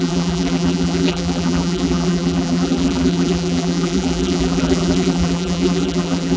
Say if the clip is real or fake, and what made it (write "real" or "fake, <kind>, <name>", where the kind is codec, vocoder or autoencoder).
fake, vocoder, BigVGAN v2